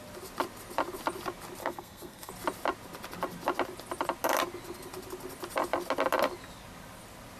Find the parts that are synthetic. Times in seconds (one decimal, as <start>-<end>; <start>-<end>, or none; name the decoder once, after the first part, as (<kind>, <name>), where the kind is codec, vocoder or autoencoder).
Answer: 1.6-2.3 (codec, SNAC)